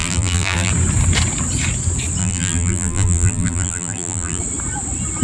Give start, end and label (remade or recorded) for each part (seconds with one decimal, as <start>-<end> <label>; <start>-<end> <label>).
0.0-0.7 remade; 0.7-2.2 recorded; 2.2-4.4 remade; 4.4-5.2 recorded